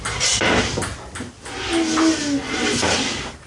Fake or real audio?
real